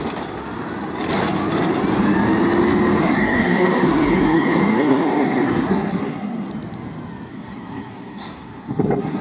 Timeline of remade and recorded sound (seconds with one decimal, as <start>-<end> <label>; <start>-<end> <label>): 0.0-3.0 recorded; 3.0-6.5 remade; 6.5-7.3 recorded; 7.3-9.2 remade